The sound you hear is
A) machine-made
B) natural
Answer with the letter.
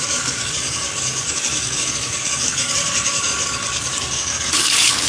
A